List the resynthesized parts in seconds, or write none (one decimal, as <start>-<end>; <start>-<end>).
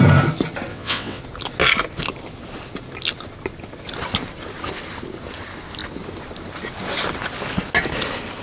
0.7-1.2